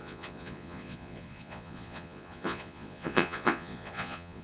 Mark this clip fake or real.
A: fake